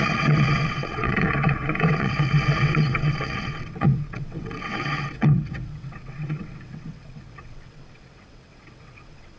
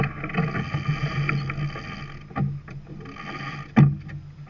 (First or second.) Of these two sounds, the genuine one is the second